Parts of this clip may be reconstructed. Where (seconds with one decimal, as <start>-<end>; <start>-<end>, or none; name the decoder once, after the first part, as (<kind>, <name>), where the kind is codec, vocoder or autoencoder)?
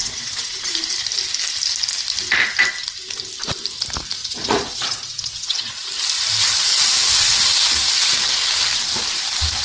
0.0-0.7 (vocoder, Vocos); 4.2-5.9